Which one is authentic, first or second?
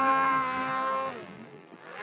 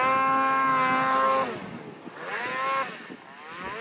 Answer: second